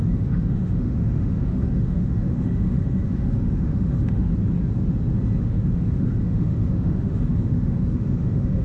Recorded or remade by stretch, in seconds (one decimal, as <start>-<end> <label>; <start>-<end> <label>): 0.0-4.3 remade; 4.3-5.4 recorded; 5.4-8.6 remade